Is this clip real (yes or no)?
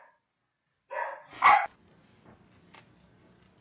yes